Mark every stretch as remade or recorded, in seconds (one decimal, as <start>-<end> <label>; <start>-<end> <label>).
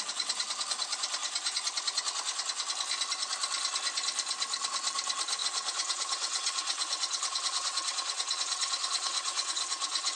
0.0-5.4 recorded; 5.4-10.2 remade